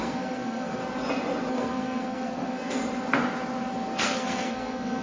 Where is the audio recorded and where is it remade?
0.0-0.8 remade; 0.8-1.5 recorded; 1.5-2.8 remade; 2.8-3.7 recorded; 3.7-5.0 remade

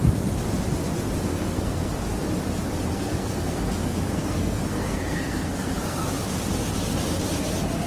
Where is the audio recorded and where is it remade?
0.0-1.3 recorded; 1.3-1.9 remade; 1.9-2.9 recorded; 2.9-6.1 remade; 6.1-7.9 recorded

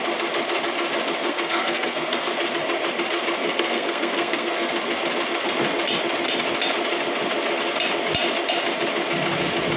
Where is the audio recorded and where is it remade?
0.0-1.2 recorded; 1.2-2.3 remade; 2.3-3.4 recorded; 3.4-4.7 remade; 4.7-9.8 recorded

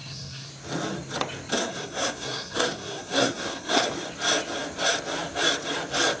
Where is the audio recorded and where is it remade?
0.0-0.5 remade; 0.5-1.6 recorded; 1.6-3.9 remade; 3.9-6.2 recorded

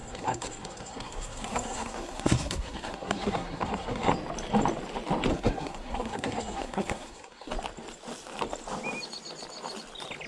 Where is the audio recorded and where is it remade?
0.0-4.1 remade; 4.1-5.3 recorded; 5.3-7.5 remade; 7.5-10.3 recorded